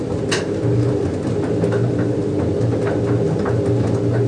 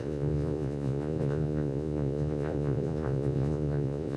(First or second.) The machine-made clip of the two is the second